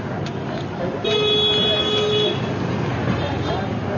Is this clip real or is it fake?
real